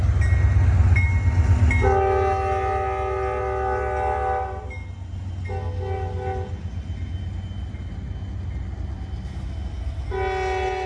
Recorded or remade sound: recorded